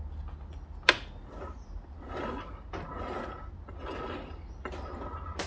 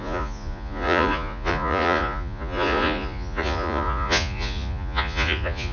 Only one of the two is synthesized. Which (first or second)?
second